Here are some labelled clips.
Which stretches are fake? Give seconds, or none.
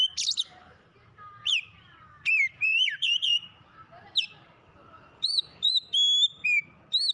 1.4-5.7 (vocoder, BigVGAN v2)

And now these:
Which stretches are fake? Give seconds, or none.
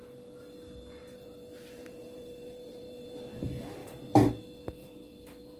1.0-3.2 (vocoder, BigVGAN v2); 4.8-5.6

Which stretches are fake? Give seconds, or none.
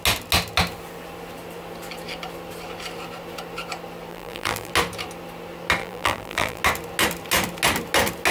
4.1-4.7 (vocoder, BigVGAN v2); 5.8-6.6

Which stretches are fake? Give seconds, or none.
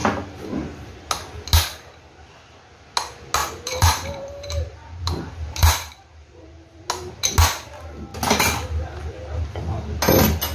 3.4-6.9 (vocoder, BigVGAN v2)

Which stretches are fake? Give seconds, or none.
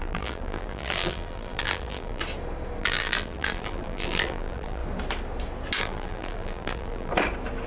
0.0-2.2 (vocoder, BigVGAN v2); 2.8-4.8; 5.8-7.1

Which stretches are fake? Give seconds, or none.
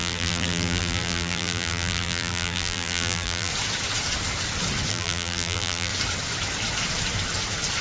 0.0-3.5 (vocoder, BigVGAN v2); 4.9-5.9